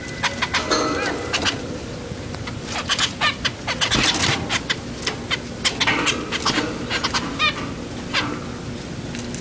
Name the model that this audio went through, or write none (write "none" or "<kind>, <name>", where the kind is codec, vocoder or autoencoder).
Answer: none